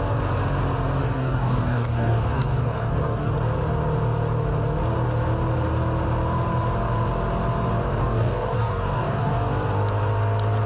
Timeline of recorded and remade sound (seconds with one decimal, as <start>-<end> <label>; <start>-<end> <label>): 0.0-1.0 recorded; 1.0-3.3 remade; 3.3-8.0 recorded; 8.0-9.3 remade; 9.3-10.7 recorded